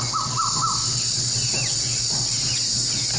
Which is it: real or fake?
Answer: real